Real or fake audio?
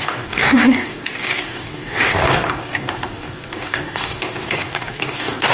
fake